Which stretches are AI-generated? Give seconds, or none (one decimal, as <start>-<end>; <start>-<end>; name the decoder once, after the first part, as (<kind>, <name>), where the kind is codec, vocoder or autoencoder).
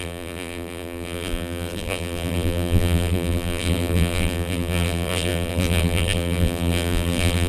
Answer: 0.0-7.5 (vocoder, BigVGAN v2)